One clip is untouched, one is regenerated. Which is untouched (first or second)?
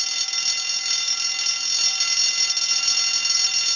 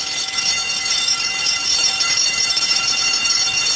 first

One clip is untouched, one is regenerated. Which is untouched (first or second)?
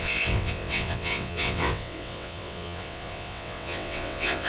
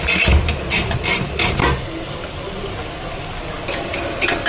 second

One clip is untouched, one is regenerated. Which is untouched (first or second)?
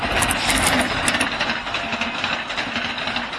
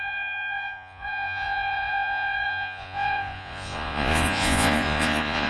first